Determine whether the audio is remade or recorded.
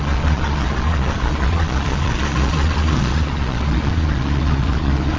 remade